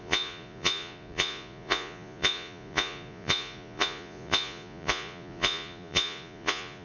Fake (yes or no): yes